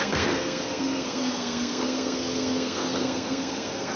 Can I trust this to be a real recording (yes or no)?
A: no